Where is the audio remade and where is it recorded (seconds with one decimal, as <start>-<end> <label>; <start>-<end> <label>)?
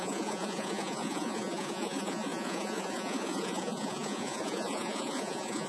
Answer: 0.0-5.7 remade